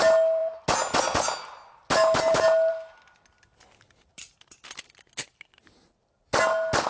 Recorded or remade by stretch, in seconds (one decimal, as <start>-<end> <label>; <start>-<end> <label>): 0.0-6.9 recorded